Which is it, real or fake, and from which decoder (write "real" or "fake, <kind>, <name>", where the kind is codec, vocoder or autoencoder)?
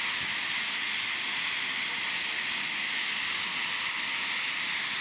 real